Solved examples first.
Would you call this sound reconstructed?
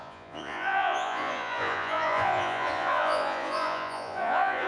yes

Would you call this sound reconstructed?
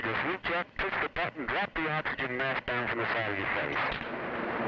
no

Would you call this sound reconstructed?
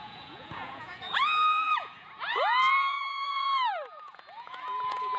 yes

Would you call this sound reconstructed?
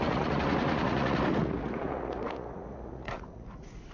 yes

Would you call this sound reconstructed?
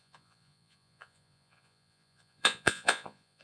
yes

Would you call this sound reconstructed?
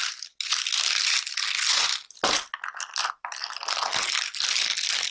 no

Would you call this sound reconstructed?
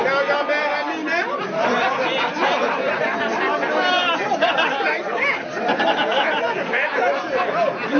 no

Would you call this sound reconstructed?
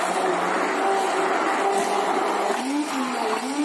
no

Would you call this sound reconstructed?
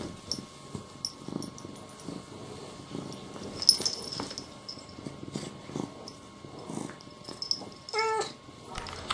no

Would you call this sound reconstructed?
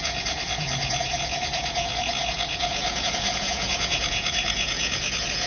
yes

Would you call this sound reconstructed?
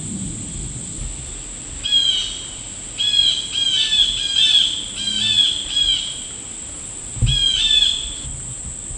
no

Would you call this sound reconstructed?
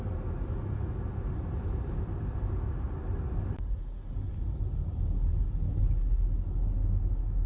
no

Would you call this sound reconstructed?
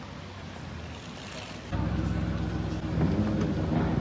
no